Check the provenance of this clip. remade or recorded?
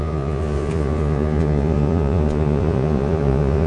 remade